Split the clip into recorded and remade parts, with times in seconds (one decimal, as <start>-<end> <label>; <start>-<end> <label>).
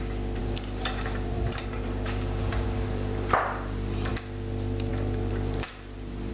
0.0-0.4 recorded; 0.4-4.1 remade; 4.1-4.9 recorded; 4.9-6.3 remade